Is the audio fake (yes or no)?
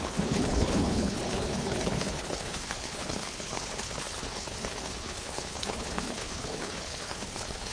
yes